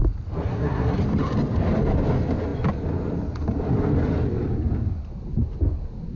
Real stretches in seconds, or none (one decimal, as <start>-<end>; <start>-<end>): 0.0-0.5; 1.0-6.2